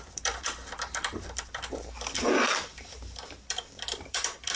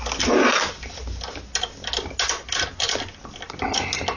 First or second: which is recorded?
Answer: second